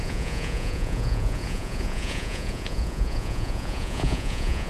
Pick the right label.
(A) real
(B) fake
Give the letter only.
B